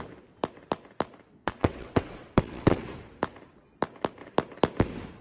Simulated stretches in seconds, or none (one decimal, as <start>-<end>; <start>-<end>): 1.4-2.9